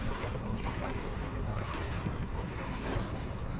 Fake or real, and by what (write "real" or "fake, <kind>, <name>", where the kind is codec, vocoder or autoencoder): fake, codec, SNAC